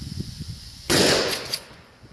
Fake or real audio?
fake